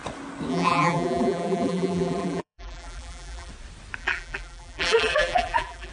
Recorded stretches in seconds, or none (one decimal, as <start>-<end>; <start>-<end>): 0.0-0.5; 3.5-4.0